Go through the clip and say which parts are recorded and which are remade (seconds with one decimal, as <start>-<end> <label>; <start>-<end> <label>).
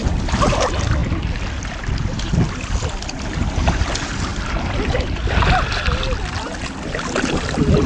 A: 0.0-7.9 recorded